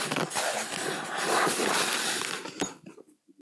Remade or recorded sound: remade